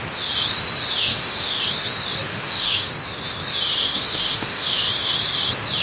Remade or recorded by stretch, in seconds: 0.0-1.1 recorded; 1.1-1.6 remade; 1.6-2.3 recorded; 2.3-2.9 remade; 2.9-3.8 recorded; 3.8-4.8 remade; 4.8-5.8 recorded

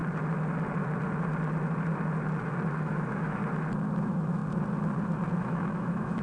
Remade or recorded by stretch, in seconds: 0.0-2.8 recorded; 2.8-3.4 remade; 3.4-4.0 recorded; 4.0-4.4 remade; 4.4-5.4 recorded; 5.4-6.2 remade

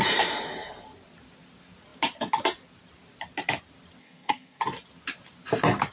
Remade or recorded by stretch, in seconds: 0.0-4.0 recorded; 4.0-4.6 remade; 4.6-5.9 recorded

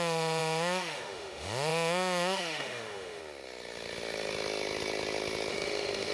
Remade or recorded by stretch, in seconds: 0.0-3.2 remade; 3.2-5.5 recorded; 5.5-6.1 remade

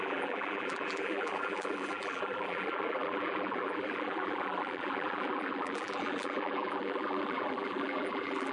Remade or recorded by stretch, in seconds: 0.0-8.5 remade

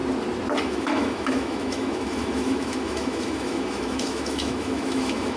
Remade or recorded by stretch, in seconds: 0.0-0.6 recorded; 0.6-5.4 remade